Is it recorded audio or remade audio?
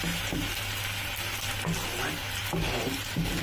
recorded